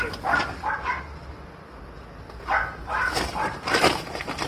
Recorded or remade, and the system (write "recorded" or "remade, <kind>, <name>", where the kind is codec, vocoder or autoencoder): recorded